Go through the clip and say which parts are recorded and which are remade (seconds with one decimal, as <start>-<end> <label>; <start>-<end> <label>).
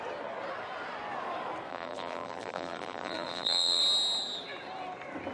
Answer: 0.0-1.7 recorded; 1.7-3.8 remade; 3.8-5.3 recorded